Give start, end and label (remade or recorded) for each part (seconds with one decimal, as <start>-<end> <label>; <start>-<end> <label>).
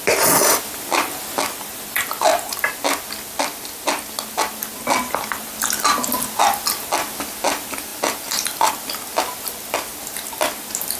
0.0-7.9 recorded; 7.9-8.7 remade; 8.7-11.0 recorded